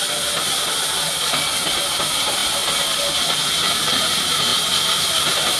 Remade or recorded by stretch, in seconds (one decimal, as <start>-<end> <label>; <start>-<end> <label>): 0.0-5.6 recorded